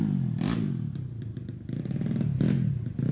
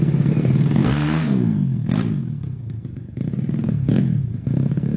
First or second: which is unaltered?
first